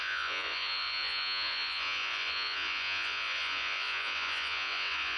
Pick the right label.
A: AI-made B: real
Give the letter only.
A